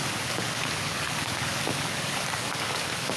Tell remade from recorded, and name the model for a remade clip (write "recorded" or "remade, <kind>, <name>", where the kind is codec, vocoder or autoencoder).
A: remade, codec, DAC